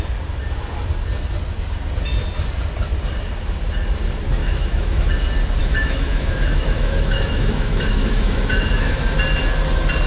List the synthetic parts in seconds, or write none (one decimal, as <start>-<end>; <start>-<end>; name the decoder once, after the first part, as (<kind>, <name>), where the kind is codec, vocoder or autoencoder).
4.4-5.1 (autoencoder, DAC-VAE); 5.6-9.0